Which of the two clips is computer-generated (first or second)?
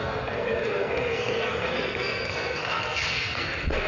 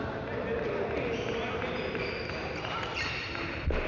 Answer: first